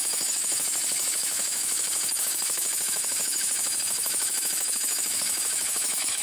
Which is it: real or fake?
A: fake